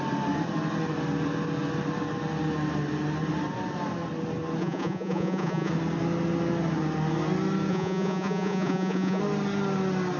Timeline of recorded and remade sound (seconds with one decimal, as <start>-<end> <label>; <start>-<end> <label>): 0.0-4.6 recorded; 4.6-5.7 remade; 5.7-7.7 recorded; 7.7-9.2 remade; 9.2-10.2 recorded